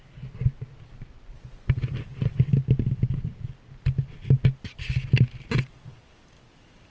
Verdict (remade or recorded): recorded